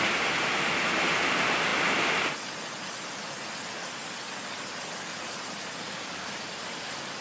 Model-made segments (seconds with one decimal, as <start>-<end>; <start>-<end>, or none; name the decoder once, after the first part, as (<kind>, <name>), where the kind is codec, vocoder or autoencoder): none